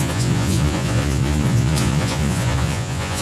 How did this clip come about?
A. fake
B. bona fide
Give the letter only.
A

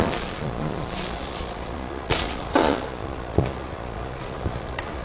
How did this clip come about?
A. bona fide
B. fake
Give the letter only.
B